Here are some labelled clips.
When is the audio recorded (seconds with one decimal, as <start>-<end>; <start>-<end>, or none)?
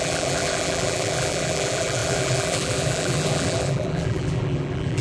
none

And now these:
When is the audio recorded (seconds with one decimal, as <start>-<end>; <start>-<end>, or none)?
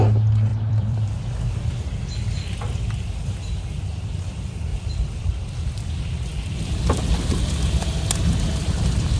0.0-0.5; 1.1-4.7; 5.3-6.3; 7.5-9.2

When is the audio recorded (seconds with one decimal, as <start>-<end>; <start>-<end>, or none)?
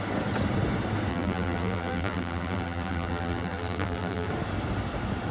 0.0-1.1; 4.3-5.3